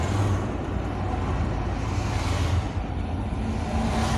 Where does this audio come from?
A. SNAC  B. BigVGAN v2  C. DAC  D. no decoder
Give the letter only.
D